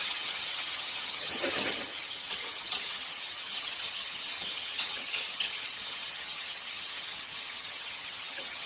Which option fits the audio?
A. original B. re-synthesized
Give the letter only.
B